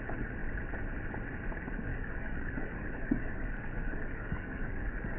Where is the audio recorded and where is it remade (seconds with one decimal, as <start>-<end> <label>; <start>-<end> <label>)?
0.0-1.9 recorded; 1.9-5.2 remade